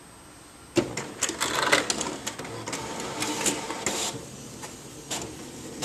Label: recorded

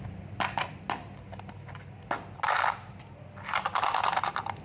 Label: recorded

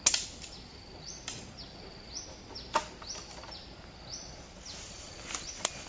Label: recorded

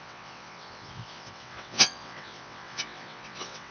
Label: remade